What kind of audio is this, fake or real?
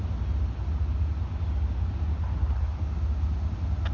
real